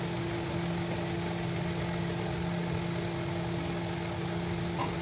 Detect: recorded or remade recorded